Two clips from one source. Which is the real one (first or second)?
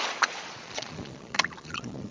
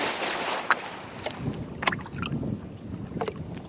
second